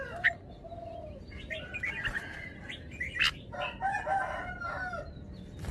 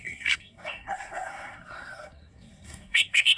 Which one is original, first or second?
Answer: first